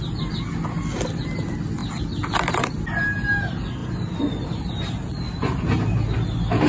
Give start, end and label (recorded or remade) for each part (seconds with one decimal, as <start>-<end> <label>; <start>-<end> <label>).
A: 0.0-6.7 recorded

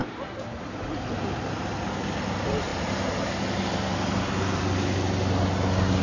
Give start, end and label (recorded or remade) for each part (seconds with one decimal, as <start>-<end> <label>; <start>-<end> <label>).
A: 0.0-1.7 remade; 1.7-6.0 recorded